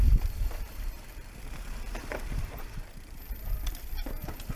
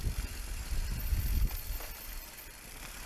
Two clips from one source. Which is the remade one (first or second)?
first